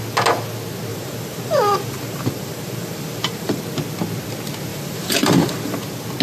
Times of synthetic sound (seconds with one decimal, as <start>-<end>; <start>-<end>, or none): 0.9-3.6; 4.7-5.8

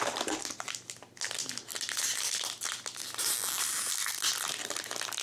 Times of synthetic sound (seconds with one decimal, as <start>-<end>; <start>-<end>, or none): none